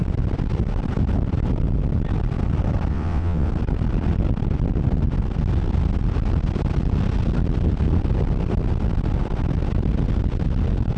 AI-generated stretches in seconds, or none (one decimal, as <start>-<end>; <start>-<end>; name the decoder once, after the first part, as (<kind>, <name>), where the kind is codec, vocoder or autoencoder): 2.9-3.5 (vocoder, WaveNeXt)